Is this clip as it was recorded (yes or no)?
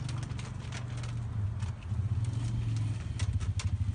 yes